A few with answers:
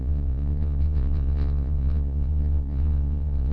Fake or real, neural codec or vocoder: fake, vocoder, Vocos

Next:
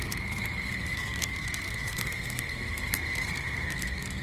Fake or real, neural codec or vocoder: fake, codec, SNAC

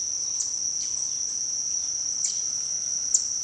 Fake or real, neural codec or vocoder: real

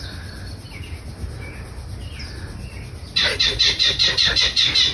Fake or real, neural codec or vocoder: real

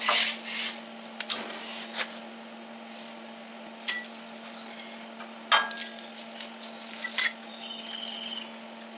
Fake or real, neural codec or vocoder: real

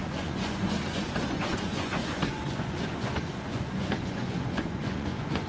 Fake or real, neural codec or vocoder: fake, vocoder, Vocos